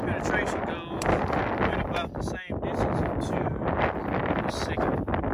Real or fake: real